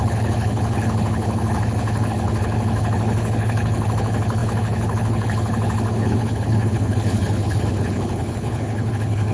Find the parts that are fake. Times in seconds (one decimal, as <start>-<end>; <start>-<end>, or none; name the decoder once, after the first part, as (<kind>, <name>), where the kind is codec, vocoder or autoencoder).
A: 0.0-9.3 (codec, HILCodec)